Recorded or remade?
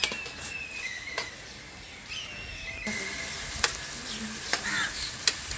recorded